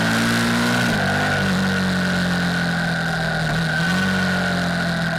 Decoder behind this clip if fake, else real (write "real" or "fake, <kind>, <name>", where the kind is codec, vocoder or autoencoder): real